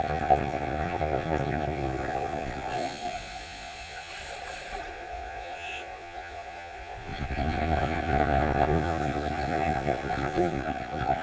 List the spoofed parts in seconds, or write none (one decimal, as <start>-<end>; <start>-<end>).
0.0-4.1; 4.9-11.2